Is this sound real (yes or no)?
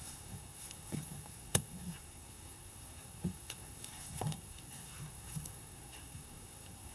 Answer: no